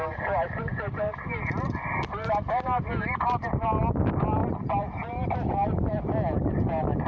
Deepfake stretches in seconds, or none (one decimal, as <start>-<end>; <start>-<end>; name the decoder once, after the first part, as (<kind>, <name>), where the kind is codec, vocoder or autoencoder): none